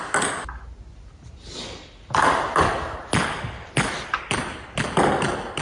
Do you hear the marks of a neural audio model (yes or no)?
no